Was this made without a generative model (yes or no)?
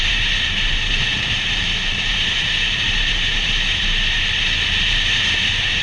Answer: no